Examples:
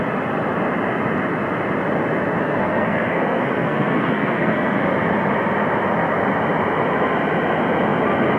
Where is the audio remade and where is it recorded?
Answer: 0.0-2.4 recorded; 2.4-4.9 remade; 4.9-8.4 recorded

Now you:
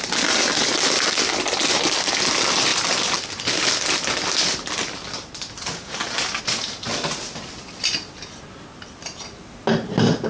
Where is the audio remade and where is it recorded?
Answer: 0.0-10.3 recorded

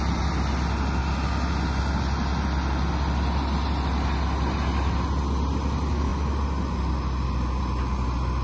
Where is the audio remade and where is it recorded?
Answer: 0.0-8.4 recorded

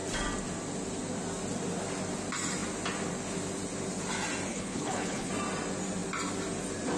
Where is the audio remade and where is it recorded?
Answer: 0.0-4.5 recorded; 4.5-5.3 remade; 5.3-7.0 recorded